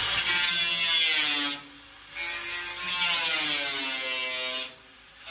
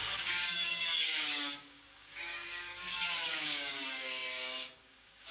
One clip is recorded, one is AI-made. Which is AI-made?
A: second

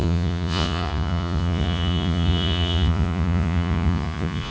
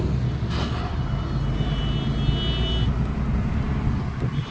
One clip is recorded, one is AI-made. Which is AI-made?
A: first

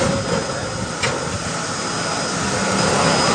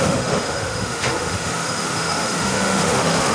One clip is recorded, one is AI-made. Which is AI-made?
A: second